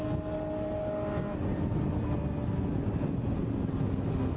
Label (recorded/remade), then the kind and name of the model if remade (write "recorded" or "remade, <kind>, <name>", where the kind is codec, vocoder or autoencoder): recorded